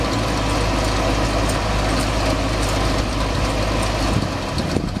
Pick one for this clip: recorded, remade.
recorded